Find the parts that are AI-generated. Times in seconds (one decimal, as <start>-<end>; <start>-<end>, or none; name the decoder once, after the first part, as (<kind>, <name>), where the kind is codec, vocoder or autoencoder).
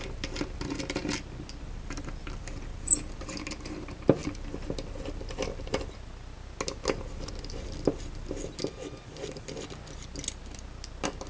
none